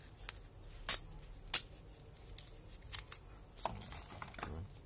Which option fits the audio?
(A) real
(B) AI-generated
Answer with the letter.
A